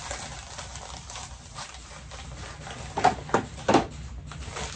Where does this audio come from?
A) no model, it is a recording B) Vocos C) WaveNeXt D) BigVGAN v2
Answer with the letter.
A